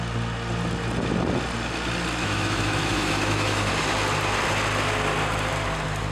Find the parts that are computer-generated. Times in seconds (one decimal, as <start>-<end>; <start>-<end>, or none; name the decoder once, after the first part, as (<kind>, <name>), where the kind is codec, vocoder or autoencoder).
2.2-3.7 (autoencoder, DAC-VAE)